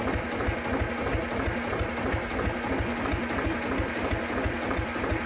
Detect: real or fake real